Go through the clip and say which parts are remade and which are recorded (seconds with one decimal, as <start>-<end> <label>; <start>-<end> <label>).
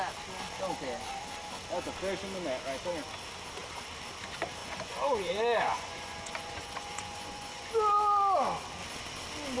0.0-4.6 recorded; 4.6-7.7 remade; 7.7-9.6 recorded